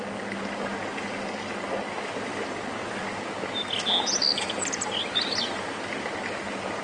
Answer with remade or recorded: recorded